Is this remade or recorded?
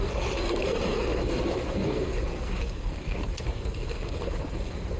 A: remade